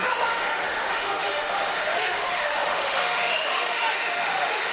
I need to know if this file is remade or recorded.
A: remade